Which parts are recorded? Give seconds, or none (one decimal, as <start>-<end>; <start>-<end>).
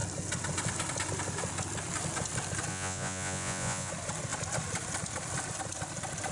0.0-2.7; 3.9-6.3